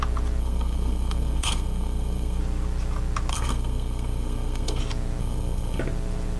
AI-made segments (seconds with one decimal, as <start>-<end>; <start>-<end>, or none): 0.4-2.4; 3.3-4.8; 5.2-5.8